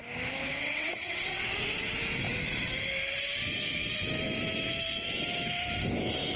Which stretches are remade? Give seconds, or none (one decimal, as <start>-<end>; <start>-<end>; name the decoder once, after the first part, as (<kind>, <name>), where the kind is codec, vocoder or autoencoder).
0.4-1.8 (vocoder, WaveNeXt)